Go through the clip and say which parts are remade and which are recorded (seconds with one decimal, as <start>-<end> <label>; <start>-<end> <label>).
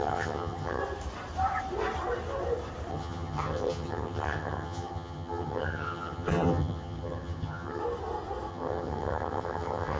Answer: 0.0-0.8 remade; 0.8-2.9 recorded; 2.9-7.8 remade; 7.8-8.5 recorded; 8.5-10.0 remade